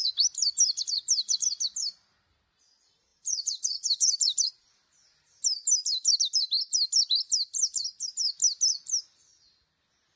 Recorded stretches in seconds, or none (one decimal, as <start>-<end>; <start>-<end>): 0.0-3.1; 4.5-10.2